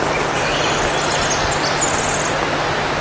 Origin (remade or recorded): recorded